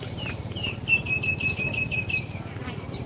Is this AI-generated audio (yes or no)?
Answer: yes